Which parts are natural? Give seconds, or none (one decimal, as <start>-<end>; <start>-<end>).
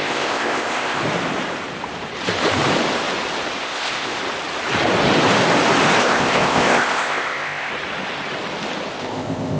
1.0-3.6; 4.2-6.0; 7.7-9.0